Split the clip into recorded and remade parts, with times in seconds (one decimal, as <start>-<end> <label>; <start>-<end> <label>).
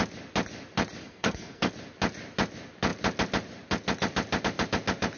0.0-1.0 recorded; 1.0-1.7 remade; 1.7-5.2 recorded